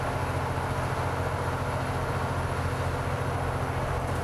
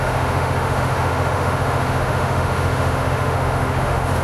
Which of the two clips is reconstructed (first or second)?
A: second